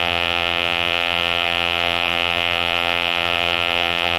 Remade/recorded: remade